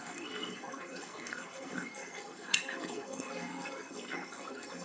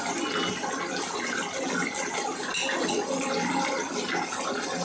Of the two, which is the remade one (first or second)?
first